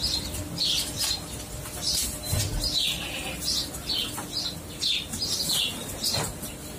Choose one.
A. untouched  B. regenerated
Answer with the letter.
A